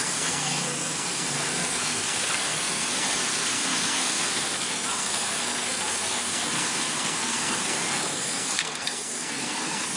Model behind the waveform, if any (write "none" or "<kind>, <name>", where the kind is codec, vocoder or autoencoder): codec, SNAC